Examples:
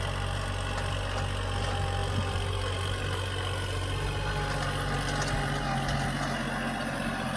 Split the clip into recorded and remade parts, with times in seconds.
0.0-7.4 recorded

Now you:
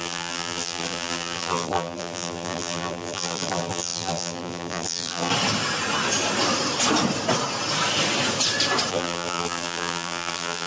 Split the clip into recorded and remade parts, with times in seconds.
0.0-5.3 remade; 5.3-8.9 recorded; 8.9-10.7 remade

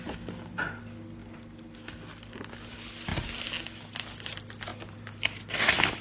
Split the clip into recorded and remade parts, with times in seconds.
0.0-4.7 recorded; 4.7-5.4 remade; 5.4-6.0 recorded

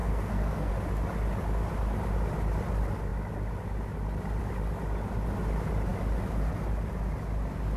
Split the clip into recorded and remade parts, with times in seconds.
0.0-0.7 remade; 0.7-7.8 recorded

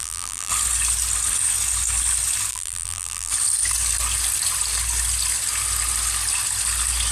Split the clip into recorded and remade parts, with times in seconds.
0.0-0.5 remade; 0.5-2.5 recorded; 2.5-3.3 remade; 3.3-7.1 recorded

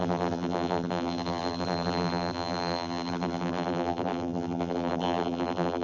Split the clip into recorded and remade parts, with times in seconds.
0.0-5.8 remade

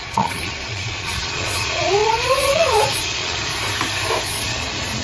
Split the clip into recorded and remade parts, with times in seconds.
0.0-3.5 remade; 3.5-4.2 recorded; 4.2-5.0 remade